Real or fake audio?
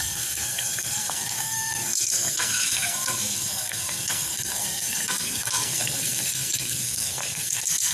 fake